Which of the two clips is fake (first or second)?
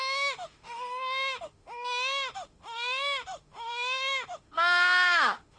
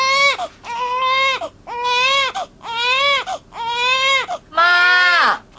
first